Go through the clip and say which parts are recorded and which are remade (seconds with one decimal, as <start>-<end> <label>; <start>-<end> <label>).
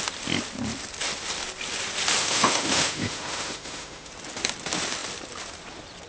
0.0-2.2 recorded; 2.2-4.1 remade; 4.1-6.1 recorded